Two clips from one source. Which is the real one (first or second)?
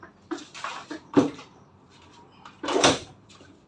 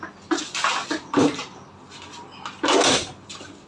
second